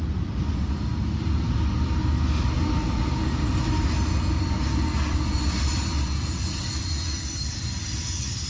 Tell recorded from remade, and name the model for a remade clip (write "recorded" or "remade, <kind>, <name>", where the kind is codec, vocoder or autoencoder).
recorded